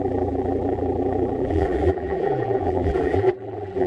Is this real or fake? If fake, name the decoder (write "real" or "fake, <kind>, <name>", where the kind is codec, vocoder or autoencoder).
fake, vocoder, BigVGAN v2